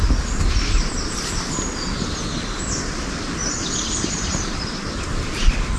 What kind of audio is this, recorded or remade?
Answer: remade